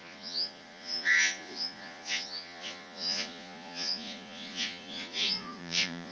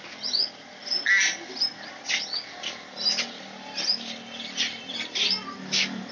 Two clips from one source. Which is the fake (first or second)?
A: first